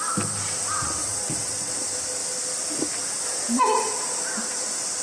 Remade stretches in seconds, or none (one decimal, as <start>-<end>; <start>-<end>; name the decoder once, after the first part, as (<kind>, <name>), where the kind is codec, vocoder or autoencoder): 1.0-1.7 (vocoder, WaveNeXt)